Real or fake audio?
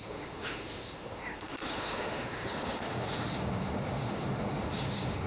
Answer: fake